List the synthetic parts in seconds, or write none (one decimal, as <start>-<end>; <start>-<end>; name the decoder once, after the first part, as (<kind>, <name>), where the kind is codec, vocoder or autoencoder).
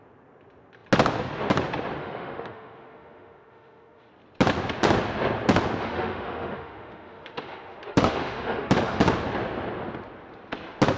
2.0-4.1 (autoencoder, DAC-VAE); 5.8-9.0